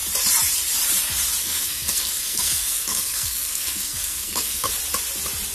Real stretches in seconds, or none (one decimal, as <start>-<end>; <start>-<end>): 0.0-1.4; 4.7-5.5